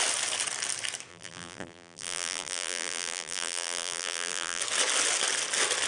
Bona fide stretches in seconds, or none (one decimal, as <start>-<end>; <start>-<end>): 0.0-1.1; 4.6-5.9